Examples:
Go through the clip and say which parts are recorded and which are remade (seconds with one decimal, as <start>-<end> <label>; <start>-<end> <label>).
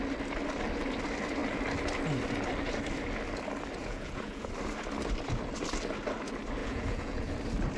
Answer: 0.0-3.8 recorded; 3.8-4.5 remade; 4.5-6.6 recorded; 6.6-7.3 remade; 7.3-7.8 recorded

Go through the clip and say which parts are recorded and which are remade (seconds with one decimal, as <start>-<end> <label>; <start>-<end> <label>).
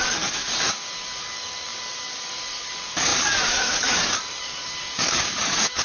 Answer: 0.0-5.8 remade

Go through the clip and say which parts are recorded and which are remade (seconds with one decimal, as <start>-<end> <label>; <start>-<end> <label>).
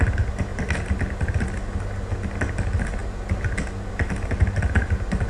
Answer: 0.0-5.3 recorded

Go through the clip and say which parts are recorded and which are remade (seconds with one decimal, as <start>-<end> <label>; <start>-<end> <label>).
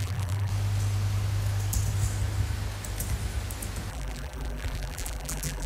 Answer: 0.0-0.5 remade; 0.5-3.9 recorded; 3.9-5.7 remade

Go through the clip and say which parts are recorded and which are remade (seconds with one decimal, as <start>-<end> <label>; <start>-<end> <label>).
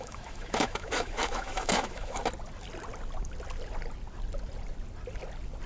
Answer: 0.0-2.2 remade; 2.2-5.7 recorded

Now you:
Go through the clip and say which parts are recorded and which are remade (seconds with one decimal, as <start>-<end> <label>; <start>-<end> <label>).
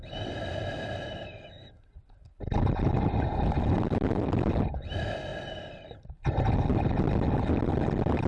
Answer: 0.0-8.3 recorded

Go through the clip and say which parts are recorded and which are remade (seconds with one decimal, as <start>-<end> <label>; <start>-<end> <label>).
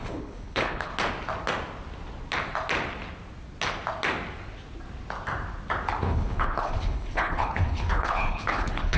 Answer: 0.0-0.9 remade; 0.9-6.0 recorded; 6.0-9.0 remade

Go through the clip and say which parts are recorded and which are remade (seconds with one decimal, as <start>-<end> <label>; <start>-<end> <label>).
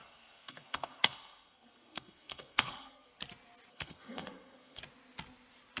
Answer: 0.0-3.2 remade; 3.2-3.7 recorded; 3.7-4.8 remade; 4.8-5.8 recorded